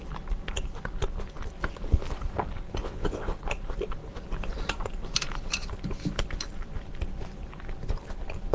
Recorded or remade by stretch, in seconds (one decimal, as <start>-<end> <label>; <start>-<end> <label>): 0.0-2.8 recorded; 2.8-3.4 remade; 3.4-8.5 recorded